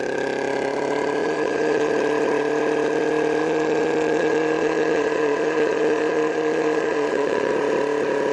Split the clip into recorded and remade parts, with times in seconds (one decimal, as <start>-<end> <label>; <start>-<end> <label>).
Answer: 0.0-1.2 recorded; 1.2-1.9 remade; 1.9-3.4 recorded; 3.4-7.5 remade; 7.5-8.3 recorded